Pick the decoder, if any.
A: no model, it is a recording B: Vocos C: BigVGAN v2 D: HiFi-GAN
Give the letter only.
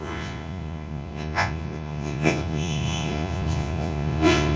B